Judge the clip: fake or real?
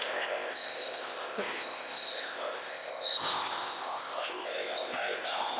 fake